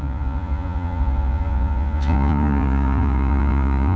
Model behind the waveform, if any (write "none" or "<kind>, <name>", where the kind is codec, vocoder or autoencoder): vocoder, Vocos